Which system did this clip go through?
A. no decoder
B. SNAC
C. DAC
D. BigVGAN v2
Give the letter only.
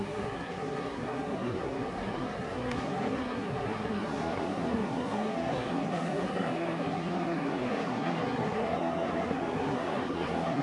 B